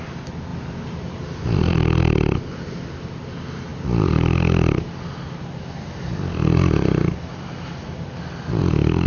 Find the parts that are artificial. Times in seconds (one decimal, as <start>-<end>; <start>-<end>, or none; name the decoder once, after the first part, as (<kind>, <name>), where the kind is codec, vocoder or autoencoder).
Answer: none